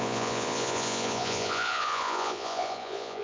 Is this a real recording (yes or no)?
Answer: no